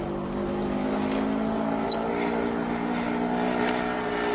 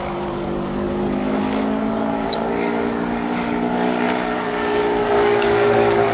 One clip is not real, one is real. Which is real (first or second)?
first